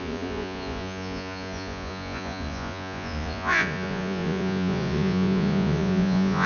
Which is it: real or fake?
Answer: fake